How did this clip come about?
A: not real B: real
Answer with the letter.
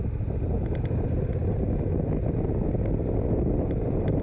B